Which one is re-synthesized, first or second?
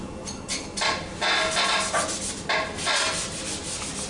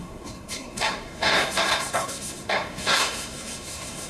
second